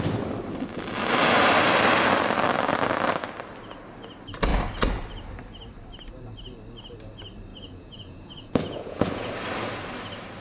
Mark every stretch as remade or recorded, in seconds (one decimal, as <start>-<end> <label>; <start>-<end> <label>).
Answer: 0.0-7.5 recorded; 7.5-9.3 remade; 9.3-10.4 recorded